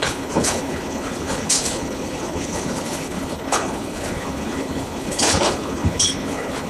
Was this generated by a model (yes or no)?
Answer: yes